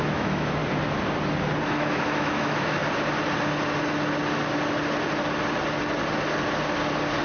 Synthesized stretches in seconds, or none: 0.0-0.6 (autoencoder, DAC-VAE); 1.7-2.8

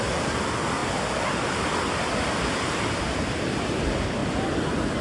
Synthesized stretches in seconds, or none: none

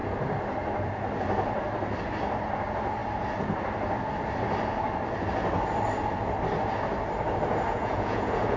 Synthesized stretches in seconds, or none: 7.7-8.6 (vocoder, Vocos)

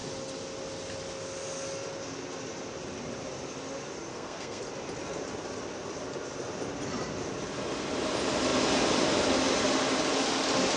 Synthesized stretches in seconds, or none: 4.1-4.6 (codec, SNAC)

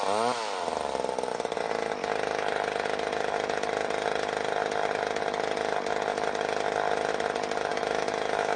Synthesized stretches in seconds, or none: 7.7-8.6 (autoencoder, DAC-VAE)